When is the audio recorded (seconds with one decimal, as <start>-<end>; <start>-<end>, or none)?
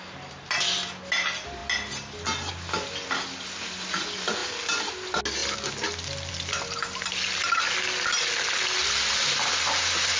0.0-10.2